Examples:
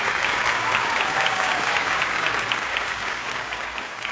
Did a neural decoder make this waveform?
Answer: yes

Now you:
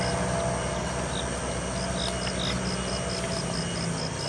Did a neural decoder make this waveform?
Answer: no